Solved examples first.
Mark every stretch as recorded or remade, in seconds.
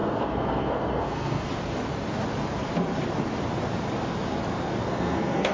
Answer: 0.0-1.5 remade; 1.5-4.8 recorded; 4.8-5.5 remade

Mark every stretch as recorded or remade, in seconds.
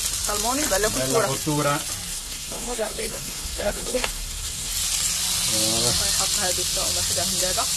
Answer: 0.0-2.1 recorded; 2.1-4.7 remade; 4.7-7.8 recorded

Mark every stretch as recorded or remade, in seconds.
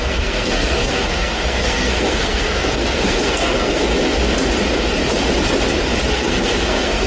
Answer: 0.0-3.9 remade; 3.9-6.1 recorded; 6.1-7.1 remade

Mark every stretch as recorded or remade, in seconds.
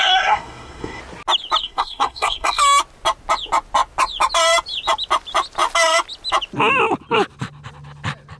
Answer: 0.0-1.0 remade; 1.0-1.6 recorded; 1.6-2.6 remade; 2.6-8.4 recorded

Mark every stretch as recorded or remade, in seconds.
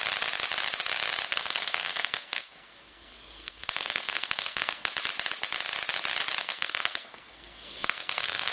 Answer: 0.0-1.3 recorded; 1.3-4.9 remade; 4.9-6.4 recorded; 6.4-8.5 remade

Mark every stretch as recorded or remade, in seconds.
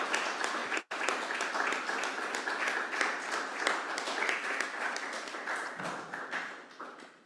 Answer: 0.0-7.3 recorded